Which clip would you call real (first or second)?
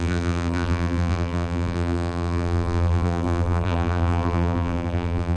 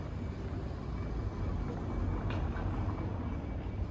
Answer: second